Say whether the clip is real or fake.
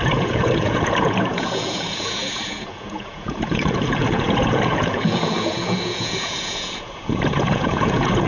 fake